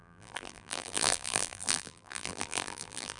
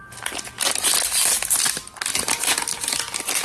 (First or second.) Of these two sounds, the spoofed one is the first